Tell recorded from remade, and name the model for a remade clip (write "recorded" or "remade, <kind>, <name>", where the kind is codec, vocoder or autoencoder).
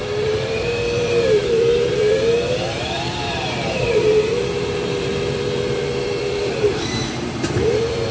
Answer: remade, vocoder, BigVGAN v2